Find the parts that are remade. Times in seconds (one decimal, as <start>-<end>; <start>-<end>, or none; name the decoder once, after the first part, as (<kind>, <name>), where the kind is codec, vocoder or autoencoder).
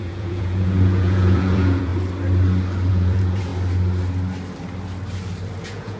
0.0-1.9 (vocoder, Vocos); 2.9-3.5; 5.6-6.0